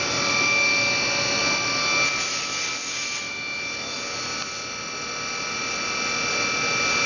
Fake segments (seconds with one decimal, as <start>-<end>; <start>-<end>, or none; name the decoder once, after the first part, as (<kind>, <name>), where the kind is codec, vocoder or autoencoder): none